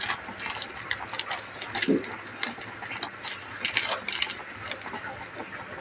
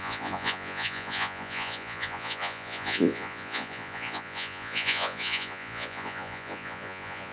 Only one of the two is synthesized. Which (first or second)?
second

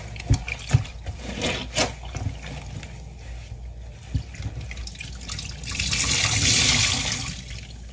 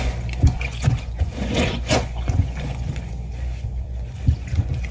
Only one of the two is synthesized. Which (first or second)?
second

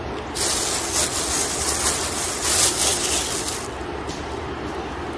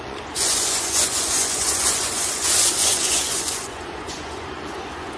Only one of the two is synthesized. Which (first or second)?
second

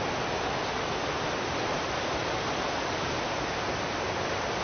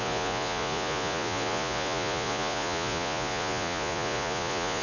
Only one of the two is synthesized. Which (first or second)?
second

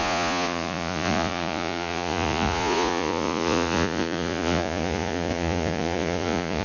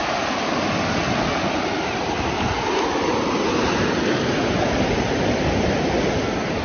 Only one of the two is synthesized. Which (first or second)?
first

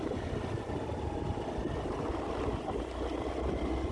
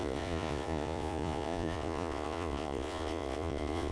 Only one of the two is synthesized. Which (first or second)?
second